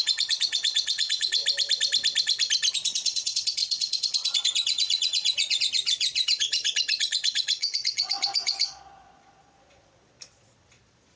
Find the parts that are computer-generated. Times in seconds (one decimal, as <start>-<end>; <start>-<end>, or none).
0.0-1.4; 2.7-11.2